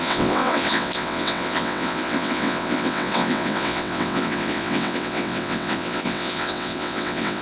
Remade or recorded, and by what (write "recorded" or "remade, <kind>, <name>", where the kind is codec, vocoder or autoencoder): remade, vocoder, WaveNeXt